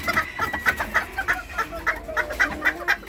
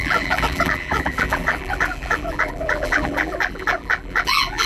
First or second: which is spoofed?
second